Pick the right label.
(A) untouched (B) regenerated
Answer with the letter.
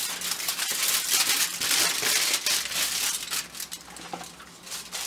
A